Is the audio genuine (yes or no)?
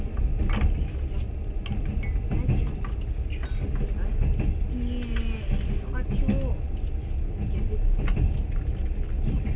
yes